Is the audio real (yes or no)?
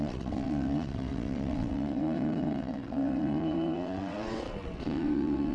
no